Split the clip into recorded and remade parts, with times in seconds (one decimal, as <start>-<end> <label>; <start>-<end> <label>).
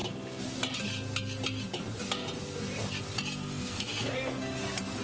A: 0.0-3.4 recorded; 3.4-4.1 remade; 4.1-5.0 recorded